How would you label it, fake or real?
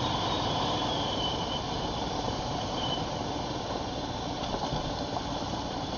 fake